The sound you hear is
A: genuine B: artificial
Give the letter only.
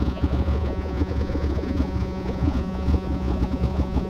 B